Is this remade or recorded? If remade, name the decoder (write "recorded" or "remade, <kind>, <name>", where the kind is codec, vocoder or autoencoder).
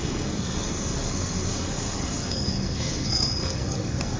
remade, codec, SNAC